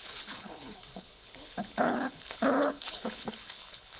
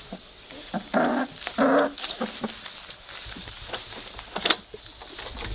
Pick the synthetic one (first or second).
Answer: first